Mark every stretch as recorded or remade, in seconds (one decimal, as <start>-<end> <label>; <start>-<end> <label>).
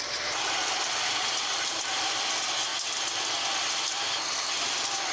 0.0-5.1 recorded